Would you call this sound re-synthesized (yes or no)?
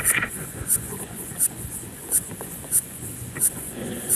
yes